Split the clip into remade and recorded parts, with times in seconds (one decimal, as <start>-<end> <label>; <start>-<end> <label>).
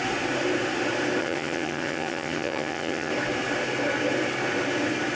0.0-1.2 recorded; 1.2-3.1 remade; 3.1-5.1 recorded